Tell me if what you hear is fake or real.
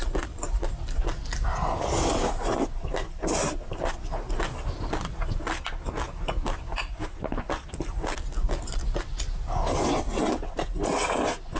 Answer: real